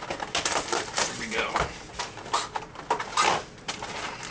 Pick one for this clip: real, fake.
real